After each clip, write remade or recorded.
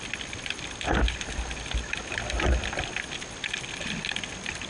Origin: recorded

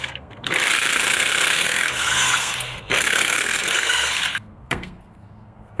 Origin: remade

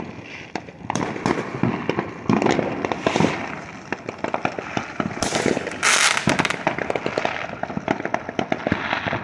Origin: recorded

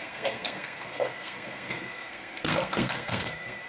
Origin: remade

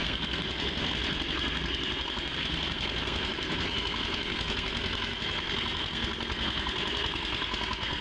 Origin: remade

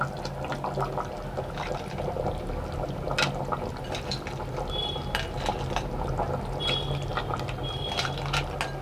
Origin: recorded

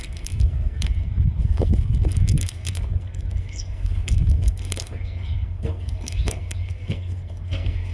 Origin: remade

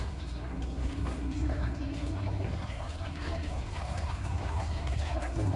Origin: remade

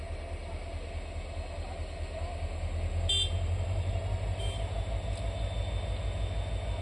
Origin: recorded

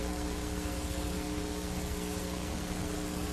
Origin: remade